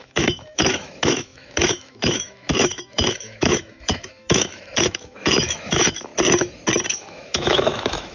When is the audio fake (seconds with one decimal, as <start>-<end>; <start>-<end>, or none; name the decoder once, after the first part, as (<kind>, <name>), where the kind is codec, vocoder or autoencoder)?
0.0-6.1 (autoencoder, DAC-VAE); 6.9-8.1